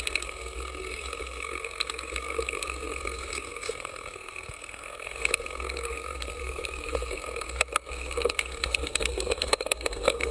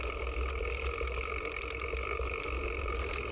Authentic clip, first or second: second